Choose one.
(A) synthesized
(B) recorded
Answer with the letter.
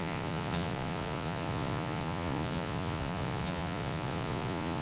A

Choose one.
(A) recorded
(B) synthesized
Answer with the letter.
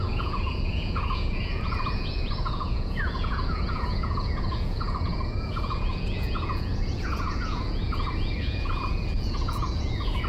B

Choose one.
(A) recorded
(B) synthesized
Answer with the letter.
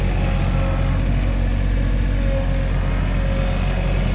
A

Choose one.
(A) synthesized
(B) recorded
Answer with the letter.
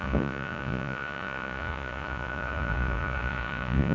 A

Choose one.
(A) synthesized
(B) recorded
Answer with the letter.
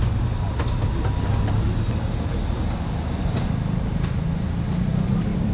B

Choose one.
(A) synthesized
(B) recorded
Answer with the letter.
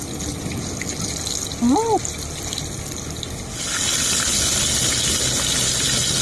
B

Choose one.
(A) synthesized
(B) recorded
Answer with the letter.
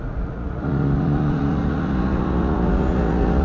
A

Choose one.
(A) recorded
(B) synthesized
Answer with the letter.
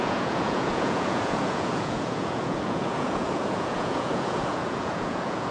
B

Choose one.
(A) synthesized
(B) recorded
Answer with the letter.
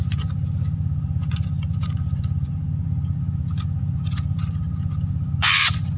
A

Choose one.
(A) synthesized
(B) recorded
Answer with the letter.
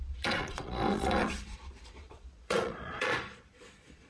A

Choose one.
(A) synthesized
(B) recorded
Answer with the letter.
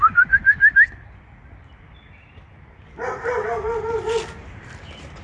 B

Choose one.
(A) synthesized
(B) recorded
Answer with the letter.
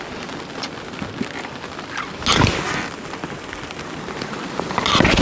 B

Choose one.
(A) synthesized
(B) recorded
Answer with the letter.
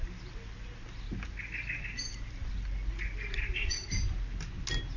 B